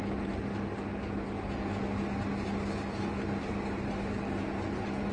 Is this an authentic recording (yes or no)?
yes